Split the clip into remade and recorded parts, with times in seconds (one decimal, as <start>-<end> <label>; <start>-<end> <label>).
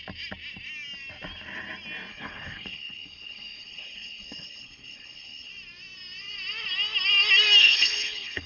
0.0-2.1 recorded; 2.1-5.5 remade; 5.5-7.6 recorded; 7.6-8.5 remade